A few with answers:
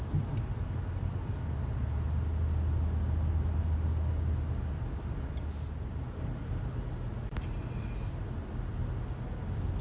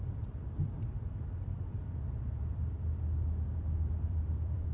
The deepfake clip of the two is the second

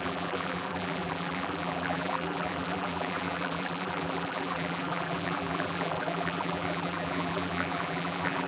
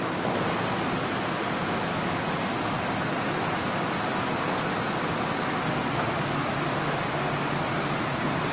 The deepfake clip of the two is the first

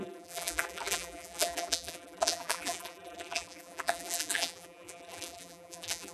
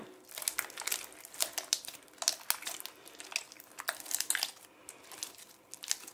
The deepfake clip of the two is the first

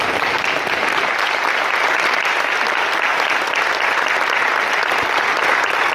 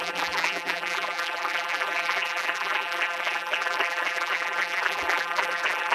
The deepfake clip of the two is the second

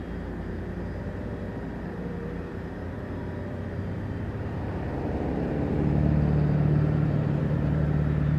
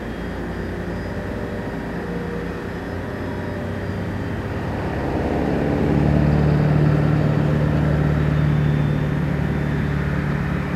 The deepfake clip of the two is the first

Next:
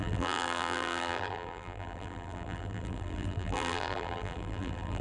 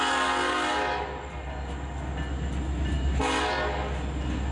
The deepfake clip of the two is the first